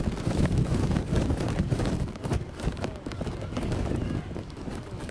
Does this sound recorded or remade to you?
remade